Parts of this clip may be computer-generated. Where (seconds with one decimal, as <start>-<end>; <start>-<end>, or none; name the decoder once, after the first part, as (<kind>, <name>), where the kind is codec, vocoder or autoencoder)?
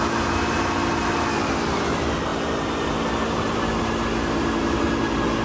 none